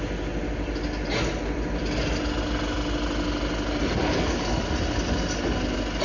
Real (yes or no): yes